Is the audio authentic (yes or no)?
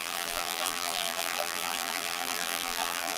no